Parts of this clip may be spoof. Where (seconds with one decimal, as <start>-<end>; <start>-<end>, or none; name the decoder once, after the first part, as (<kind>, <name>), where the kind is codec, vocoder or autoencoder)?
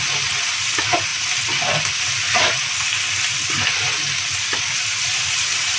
none